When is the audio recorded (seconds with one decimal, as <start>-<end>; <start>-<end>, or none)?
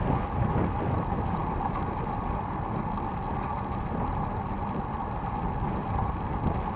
0.0-6.8